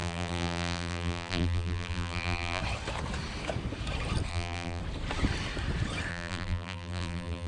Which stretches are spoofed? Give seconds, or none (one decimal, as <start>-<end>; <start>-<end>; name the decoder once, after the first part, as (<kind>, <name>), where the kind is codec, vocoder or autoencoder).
0.0-2.6 (vocoder, BigVGAN v2); 4.3-4.8; 6.1-7.5